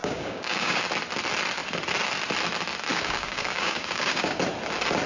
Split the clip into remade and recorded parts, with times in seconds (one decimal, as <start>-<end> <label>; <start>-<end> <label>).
0.0-0.8 remade; 0.8-2.9 recorded; 2.9-4.4 remade; 4.4-5.1 recorded